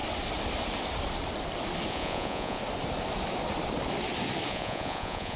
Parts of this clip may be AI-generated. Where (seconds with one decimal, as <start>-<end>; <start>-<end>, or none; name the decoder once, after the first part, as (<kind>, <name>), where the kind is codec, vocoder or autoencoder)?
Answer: 1.9-2.6 (vocoder, Vocos); 4.5-5.4